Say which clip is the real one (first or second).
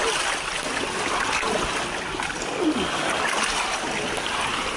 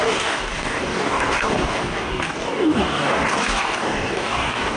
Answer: first